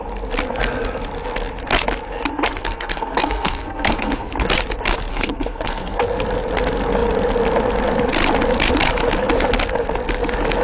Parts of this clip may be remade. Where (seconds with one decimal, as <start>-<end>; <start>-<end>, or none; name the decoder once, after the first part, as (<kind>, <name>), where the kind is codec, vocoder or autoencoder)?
2.6-4.3 (codec, SNAC); 5.1-6.0